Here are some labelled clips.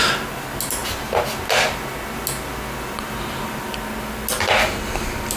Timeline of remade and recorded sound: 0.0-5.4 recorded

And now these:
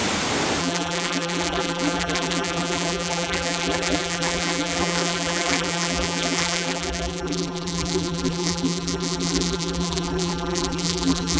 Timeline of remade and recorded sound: 0.0-0.6 recorded; 0.6-11.4 remade

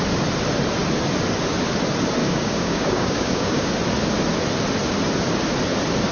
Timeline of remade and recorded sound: 0.0-2.2 recorded; 2.2-3.7 remade; 3.7-6.1 recorded

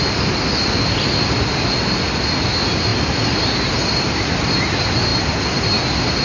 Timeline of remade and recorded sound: 0.0-6.2 recorded

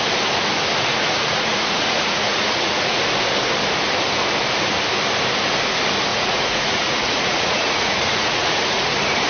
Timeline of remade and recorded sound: 0.0-0.9 recorded; 0.9-3.0 remade; 3.0-6.1 recorded; 6.1-8.9 remade; 8.9-9.3 recorded

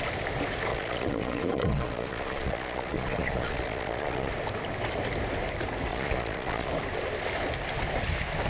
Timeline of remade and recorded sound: 0.0-0.7 recorded; 0.7-4.3 remade; 4.3-5.9 recorded; 5.9-6.7 remade; 6.7-8.5 recorded

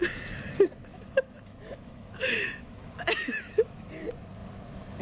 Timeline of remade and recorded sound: 0.0-0.9 recorded; 0.9-3.9 remade; 3.9-5.0 recorded

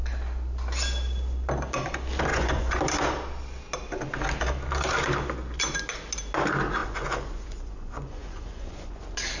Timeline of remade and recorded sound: 0.0-2.3 recorded; 2.3-2.8 remade; 2.8-6.8 recorded; 6.8-9.0 remade; 9.0-9.4 recorded